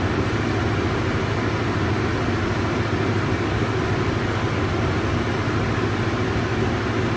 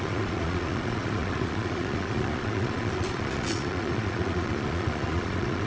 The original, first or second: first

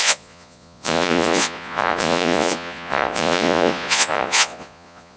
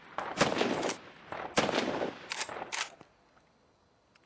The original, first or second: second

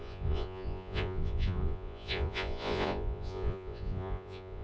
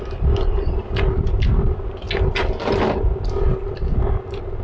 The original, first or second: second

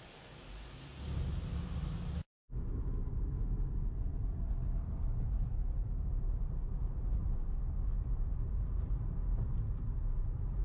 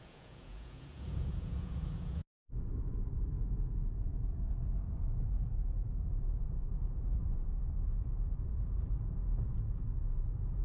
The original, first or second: first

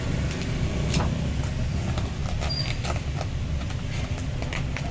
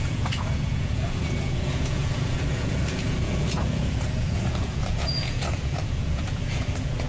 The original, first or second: first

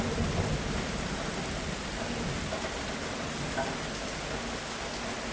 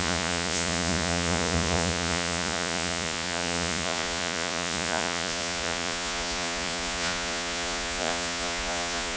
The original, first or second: first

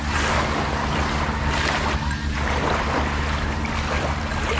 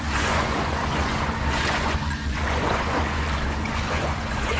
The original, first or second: first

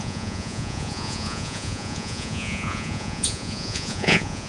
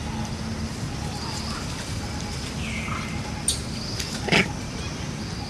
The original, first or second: second